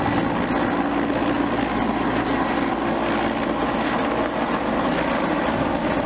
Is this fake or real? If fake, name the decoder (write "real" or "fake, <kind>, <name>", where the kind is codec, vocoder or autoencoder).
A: real